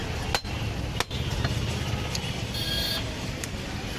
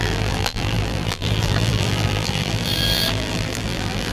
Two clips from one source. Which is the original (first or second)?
first